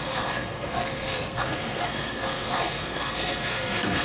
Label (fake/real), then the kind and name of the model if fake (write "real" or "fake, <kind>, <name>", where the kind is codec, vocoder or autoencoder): fake, codec, SNAC